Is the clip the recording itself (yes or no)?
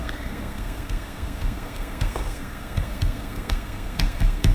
no